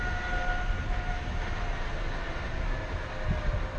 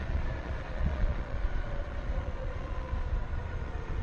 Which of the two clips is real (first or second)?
first